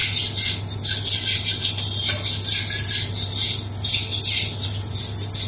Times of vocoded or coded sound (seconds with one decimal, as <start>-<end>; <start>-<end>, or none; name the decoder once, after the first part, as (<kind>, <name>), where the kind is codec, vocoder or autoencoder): none